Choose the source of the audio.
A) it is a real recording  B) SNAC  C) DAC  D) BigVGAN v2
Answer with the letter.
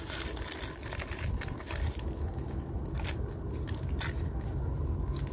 A